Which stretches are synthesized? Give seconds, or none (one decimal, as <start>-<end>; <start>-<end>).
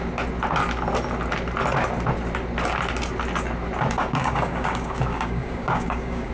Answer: 4.0-6.3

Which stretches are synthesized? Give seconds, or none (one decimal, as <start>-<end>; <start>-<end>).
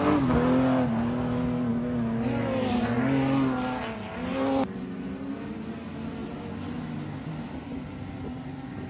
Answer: none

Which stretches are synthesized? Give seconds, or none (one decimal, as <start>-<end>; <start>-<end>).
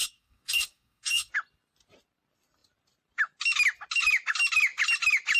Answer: 0.0-1.3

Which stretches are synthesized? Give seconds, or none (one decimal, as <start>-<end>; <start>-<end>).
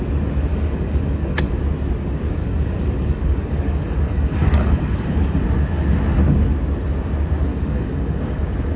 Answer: 0.5-1.5; 2.4-5.4; 7.5-8.4